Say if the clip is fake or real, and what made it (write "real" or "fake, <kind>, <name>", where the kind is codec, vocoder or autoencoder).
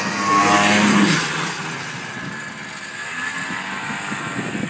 real